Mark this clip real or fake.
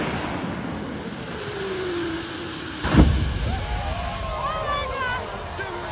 real